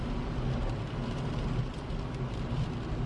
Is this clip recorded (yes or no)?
yes